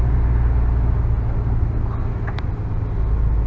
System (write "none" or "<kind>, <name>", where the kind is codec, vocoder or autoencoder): none